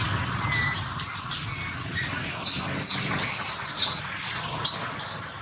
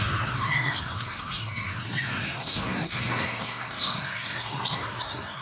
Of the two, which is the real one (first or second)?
first